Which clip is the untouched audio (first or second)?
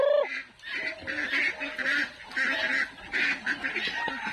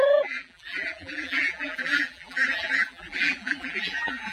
first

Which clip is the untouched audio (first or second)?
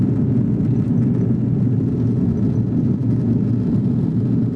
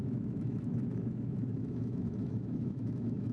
first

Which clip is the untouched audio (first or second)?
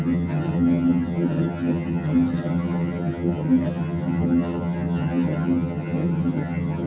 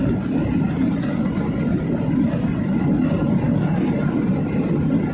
second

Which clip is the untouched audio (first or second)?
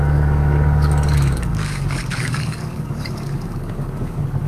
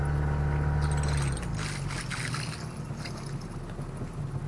second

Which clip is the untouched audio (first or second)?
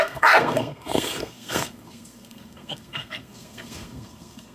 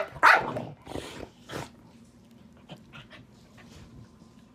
second